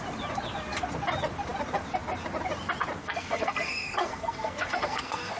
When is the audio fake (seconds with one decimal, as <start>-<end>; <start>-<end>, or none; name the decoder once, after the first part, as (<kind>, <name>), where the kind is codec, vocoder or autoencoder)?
3.0-5.4 (codec, SNAC)